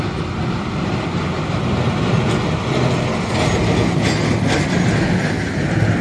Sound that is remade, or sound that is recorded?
recorded